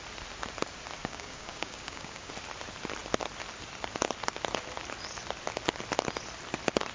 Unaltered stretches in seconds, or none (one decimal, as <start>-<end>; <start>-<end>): 0.0-1.0; 2.3-6.9